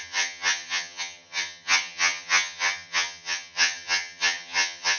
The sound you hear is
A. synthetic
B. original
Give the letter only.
A